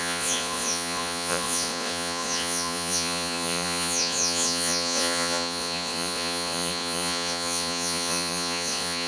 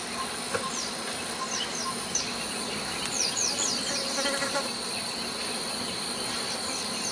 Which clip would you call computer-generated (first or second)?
first